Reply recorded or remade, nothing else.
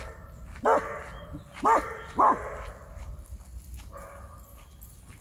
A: recorded